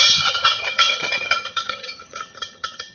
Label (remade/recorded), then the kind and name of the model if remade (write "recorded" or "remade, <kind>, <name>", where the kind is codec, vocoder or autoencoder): remade, vocoder, HiFi-GAN